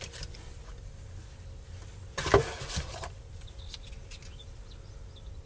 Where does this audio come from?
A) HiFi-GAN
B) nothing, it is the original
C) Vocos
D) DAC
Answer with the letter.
B